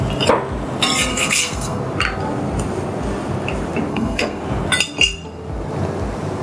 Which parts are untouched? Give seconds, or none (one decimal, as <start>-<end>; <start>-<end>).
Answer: 0.0-1.1; 1.8-3.9; 4.4-6.4